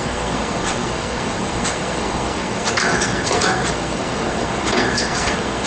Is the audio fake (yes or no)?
yes